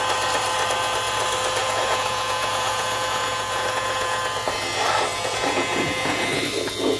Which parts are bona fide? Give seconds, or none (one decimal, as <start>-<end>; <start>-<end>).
0.0-1.6; 4.2-5.1; 6.3-7.0